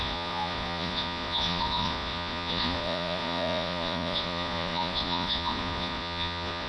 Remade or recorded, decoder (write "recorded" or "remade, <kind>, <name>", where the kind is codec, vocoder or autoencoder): remade, vocoder, Vocos